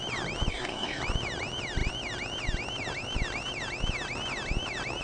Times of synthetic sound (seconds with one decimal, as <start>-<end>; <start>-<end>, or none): 0.5-1.0

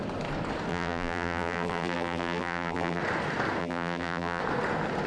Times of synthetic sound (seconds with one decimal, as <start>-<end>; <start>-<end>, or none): 0.7-3.0; 3.6-4.4

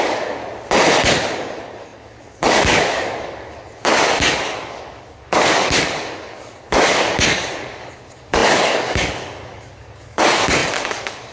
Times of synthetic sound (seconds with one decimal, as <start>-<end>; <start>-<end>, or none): 0.0-0.4; 1.3-11.3

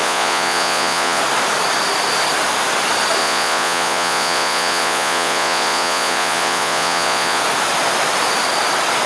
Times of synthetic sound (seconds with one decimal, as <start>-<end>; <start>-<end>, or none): 0.0-1.2; 3.2-7.4

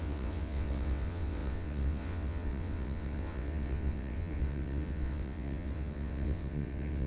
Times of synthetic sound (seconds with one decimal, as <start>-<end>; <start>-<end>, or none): 0.0-7.1